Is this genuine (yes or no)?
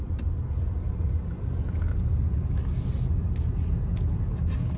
yes